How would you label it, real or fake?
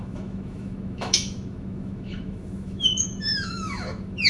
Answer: fake